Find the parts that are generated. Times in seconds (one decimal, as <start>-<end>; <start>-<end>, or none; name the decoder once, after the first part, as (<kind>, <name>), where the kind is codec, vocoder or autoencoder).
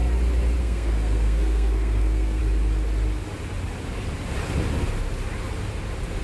0.6-2.4 (codec, SNAC)